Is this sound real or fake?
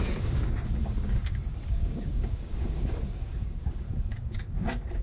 fake